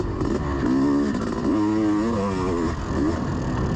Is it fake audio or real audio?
real